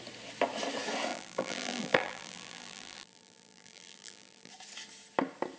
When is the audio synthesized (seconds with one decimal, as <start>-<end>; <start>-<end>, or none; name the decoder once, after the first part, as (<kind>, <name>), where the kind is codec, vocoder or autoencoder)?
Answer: 1.1-4.5 (vocoder, BigVGAN v2)